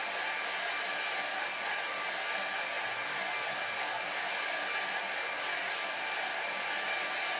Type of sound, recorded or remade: recorded